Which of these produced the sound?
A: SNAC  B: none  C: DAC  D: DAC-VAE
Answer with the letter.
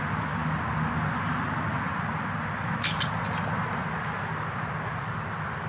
B